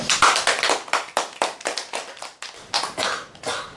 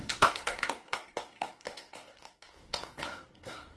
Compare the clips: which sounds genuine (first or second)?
first